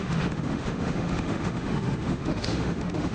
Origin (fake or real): fake